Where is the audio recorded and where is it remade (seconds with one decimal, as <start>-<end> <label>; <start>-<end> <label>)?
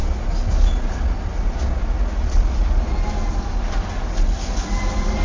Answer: 0.0-5.2 recorded